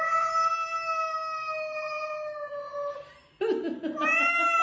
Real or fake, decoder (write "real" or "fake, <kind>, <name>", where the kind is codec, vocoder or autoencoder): real